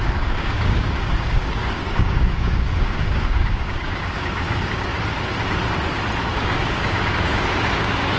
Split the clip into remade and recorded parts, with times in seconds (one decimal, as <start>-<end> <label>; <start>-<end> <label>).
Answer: 0.0-4.9 remade; 4.9-6.2 recorded; 6.2-8.2 remade